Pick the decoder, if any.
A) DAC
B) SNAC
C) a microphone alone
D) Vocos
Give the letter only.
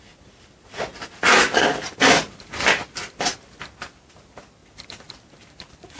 C